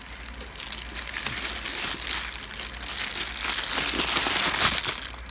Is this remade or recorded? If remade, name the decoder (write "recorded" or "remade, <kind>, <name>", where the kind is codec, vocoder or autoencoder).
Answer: recorded